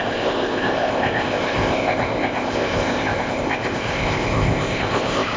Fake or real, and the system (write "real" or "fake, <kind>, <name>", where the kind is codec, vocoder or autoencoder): fake, codec, ZipCodec